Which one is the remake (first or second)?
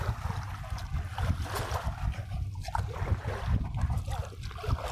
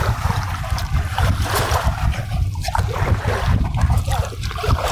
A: second